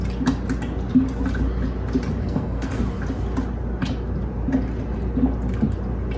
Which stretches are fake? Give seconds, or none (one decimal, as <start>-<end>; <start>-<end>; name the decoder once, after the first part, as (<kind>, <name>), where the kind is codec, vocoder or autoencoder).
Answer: 2.2-2.8 (codec, SNAC)

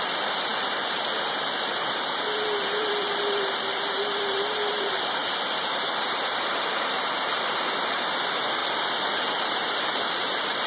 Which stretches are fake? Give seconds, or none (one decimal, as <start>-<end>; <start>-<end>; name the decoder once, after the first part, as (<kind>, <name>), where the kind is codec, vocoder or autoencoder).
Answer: 0.0-5.2 (vocoder, BigVGAN v2); 6.0-8.6; 9.3-10.7

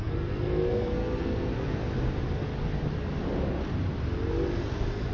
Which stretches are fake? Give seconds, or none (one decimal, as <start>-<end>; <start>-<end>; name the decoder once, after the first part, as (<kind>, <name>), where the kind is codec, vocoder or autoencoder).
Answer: 0.0-1.8 (codec, SNAC)

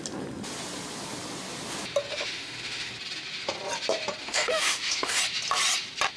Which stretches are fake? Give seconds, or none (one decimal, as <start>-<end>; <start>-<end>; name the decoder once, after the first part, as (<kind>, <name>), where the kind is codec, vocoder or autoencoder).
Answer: 2.1-2.9 (autoencoder, DAC-VAE); 4.2-5.2

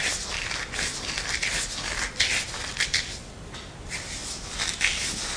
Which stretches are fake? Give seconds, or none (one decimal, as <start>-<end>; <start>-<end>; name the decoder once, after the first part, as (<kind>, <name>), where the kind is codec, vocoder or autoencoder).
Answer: none

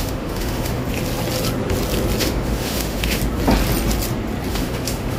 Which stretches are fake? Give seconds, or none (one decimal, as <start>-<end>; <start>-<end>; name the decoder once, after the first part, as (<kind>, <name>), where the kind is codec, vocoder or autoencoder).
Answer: 0.0-0.8 (autoencoder, DAC-VAE); 2.2-3.2; 4.5-5.2